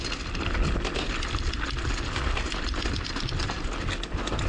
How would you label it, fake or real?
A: real